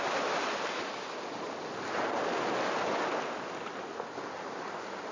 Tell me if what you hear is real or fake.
real